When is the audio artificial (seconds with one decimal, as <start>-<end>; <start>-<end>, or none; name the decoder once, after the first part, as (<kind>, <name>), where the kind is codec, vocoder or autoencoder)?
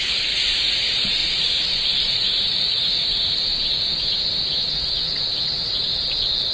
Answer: 0.0-3.5 (vocoder, Vocos); 4.7-6.5